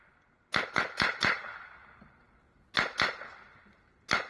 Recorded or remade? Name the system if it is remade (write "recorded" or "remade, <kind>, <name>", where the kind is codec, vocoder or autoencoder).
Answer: recorded